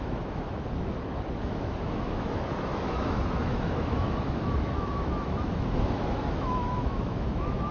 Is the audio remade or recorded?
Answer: remade